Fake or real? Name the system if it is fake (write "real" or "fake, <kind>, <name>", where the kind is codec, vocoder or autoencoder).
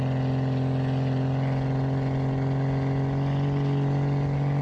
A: real